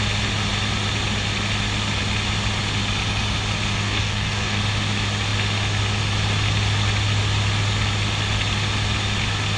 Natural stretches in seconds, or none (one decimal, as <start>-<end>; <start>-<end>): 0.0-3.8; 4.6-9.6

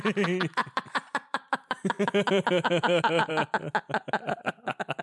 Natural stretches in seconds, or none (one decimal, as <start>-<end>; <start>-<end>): 0.0-0.6; 3.3-5.0

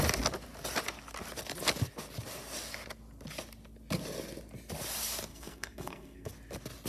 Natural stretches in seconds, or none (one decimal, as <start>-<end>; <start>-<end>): 0.0-5.3; 6.3-6.9